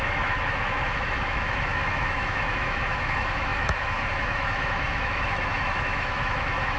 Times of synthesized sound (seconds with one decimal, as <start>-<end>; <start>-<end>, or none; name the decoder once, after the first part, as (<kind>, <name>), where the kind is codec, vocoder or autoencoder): 0.0-6.8 (autoencoder, DAC-VAE)

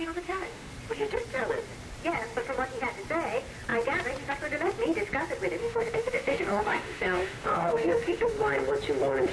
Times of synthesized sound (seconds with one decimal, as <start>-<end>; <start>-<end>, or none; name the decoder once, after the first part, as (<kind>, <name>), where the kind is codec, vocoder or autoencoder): 0.0-0.7 (autoencoder, DAC-VAE); 5.6-8.5

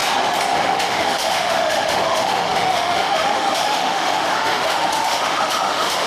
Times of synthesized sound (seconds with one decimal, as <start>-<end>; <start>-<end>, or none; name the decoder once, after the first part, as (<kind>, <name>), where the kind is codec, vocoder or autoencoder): 0.6-6.1 (autoencoder, DAC-VAE)

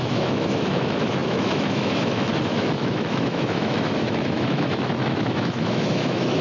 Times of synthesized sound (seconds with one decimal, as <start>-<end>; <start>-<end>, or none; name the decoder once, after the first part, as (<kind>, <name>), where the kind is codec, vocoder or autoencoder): 0.0-6.4 (autoencoder, DAC-VAE)